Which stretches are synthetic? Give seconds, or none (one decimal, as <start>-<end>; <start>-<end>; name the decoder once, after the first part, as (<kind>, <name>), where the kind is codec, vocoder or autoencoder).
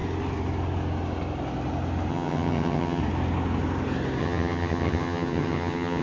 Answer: 2.1-3.0 (vocoder, HiFi-GAN); 4.2-6.0